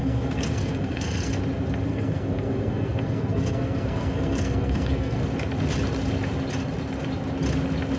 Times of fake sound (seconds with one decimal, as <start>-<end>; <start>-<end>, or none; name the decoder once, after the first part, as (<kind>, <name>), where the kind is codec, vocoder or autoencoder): 0.0-1.4 (codec, SNAC); 1.9-5.2